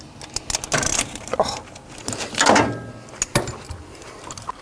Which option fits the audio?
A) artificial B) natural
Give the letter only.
B